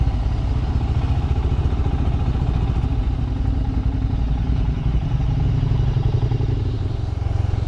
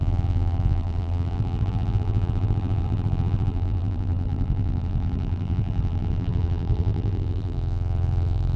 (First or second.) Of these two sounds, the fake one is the second